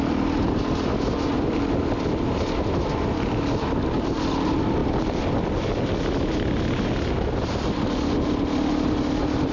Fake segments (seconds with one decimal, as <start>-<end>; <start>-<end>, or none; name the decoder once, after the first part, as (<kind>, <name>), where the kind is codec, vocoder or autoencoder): none